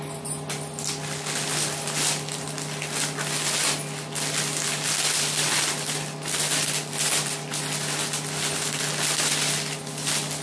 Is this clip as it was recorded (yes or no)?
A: yes